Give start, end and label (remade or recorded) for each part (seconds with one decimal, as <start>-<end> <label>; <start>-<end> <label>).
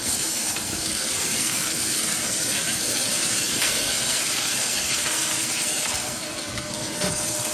0.0-7.5 remade